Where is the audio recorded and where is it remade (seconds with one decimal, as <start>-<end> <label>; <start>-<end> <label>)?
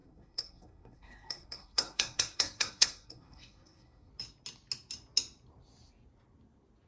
0.0-4.1 remade; 4.1-6.9 recorded